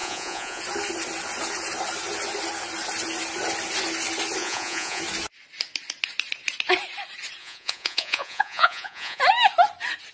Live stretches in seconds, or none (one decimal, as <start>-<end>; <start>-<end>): 0.6-4.4; 5.0-7.4; 9.2-10.1